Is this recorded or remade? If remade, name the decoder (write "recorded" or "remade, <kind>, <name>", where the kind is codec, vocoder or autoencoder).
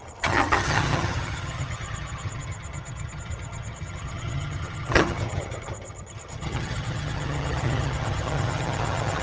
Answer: remade, vocoder, HiFi-GAN